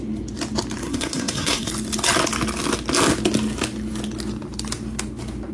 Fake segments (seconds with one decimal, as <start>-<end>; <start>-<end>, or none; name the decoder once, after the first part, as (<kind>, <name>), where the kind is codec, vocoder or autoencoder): 0.8-1.7 (codec, SNAC)